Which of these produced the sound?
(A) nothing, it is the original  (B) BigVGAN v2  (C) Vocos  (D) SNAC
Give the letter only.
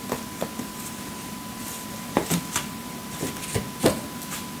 A